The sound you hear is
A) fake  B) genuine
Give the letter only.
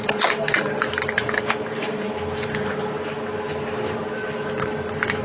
B